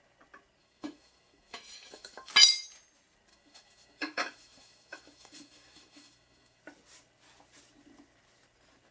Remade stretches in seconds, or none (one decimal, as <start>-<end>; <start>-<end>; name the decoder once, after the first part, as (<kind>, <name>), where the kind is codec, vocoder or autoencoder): 0.6-2.3 (autoencoder, DAC-VAE); 3.3-6.6

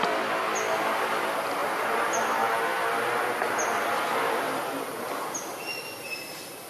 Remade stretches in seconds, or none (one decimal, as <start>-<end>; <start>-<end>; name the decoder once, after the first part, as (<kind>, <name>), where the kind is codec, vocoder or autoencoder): none

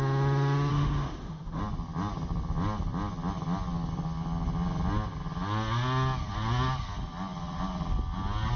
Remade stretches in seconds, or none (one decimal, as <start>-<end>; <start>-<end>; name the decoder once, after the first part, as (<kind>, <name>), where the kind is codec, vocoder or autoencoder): 0.7-1.6 (autoencoder, DAC-VAE)